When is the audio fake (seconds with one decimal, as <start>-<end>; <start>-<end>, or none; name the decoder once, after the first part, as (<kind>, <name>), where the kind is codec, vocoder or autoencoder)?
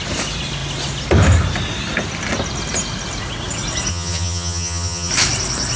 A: 3.9-5.1 (vocoder, HiFi-GAN)